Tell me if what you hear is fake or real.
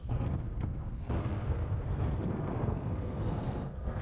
fake